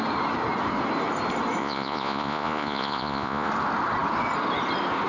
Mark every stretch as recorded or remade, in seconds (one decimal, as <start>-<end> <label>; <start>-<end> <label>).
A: 0.0-1.6 recorded; 1.6-3.5 remade; 3.5-5.1 recorded